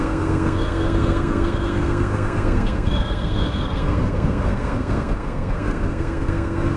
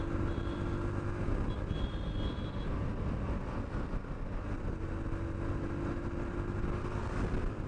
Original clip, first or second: second